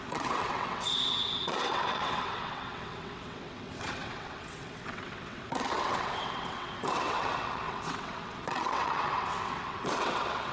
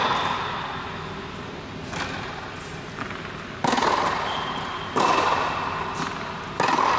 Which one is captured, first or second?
second